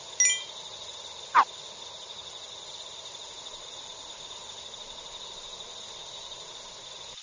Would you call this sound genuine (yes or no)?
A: yes